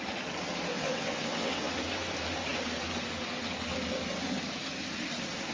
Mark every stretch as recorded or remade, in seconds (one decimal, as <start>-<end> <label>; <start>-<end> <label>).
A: 0.0-0.7 recorded; 0.7-1.7 remade; 1.7-5.5 recorded